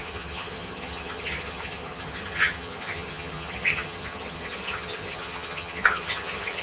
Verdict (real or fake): fake